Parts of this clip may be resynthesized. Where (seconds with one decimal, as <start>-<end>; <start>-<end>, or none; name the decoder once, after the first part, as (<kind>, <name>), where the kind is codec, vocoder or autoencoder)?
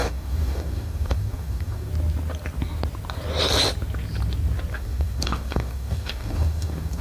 0.0-1.9 (codec, DAC); 4.7-7.0